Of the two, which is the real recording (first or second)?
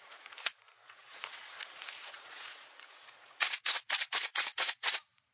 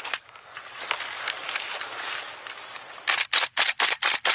second